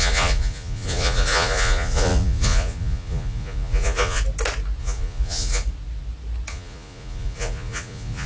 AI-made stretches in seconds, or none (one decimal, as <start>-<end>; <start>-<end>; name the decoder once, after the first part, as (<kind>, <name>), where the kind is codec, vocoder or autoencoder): 0.0-4.2 (vocoder, Vocos); 4.8-5.6; 6.5-8.3